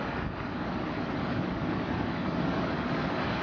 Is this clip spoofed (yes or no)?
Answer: yes